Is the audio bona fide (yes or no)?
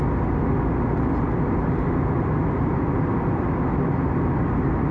yes